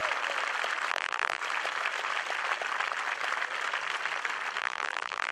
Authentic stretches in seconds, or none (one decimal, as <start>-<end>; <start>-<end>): 0.0-0.9; 1.4-4.6